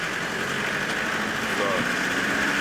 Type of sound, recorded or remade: recorded